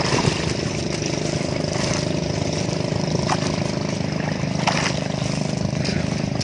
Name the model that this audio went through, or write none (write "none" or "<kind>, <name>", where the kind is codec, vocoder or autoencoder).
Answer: none